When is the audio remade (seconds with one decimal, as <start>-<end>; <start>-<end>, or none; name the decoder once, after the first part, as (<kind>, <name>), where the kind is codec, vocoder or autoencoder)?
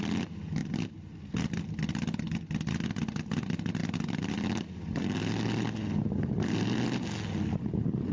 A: none